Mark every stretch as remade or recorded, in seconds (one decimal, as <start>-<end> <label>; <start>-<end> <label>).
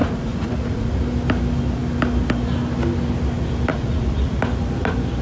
0.0-1.0 remade; 1.0-3.7 recorded; 3.7-4.4 remade; 4.4-5.2 recorded